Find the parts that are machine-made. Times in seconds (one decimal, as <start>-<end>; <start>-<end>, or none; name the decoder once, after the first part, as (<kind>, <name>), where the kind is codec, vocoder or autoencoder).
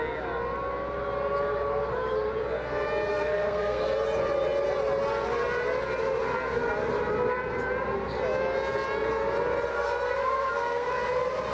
3.1-3.8 (codec, SNAC); 9.7-10.9